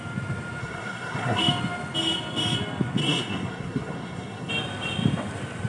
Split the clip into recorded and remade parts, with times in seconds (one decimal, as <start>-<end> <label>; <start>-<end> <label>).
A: 0.0-0.6 recorded; 0.6-1.4 remade; 1.4-3.0 recorded; 3.0-4.5 remade; 4.5-5.7 recorded